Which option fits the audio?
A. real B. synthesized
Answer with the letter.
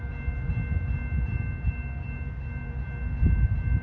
A